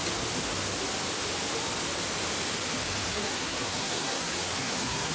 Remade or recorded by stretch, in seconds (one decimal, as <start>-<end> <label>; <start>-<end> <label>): 0.0-3.1 recorded; 3.1-5.1 remade